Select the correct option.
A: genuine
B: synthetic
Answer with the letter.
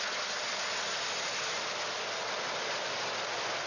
A